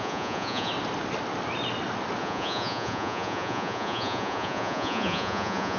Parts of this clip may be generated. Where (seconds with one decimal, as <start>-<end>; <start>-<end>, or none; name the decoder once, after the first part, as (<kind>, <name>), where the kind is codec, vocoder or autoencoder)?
0.0-0.7 (vocoder, Vocos); 2.2-5.8